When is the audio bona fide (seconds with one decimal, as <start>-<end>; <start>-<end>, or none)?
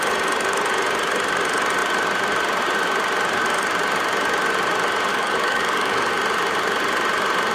0.0-5.1; 6.1-7.5